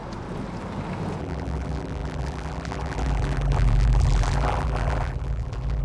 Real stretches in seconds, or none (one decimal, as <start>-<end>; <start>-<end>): 0.0-1.2